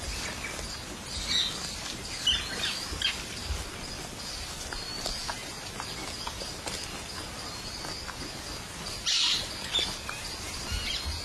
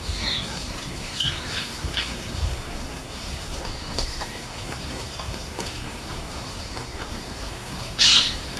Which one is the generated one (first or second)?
second